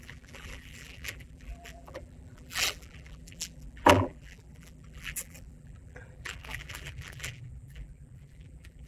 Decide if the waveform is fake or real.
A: fake